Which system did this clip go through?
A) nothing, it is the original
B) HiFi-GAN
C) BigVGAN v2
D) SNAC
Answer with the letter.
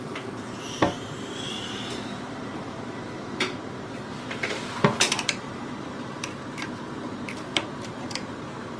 C